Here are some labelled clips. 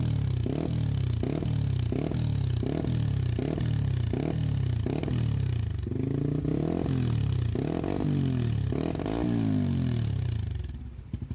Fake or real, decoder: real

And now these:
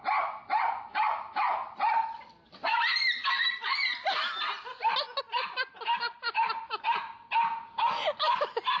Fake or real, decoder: real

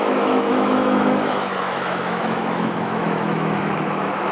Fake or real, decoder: fake, autoencoder, DAC-VAE